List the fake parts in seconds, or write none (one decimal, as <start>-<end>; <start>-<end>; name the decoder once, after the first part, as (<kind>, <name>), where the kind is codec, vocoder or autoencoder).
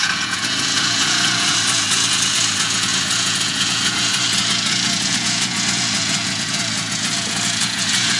0.0-8.2 (vocoder, Vocos)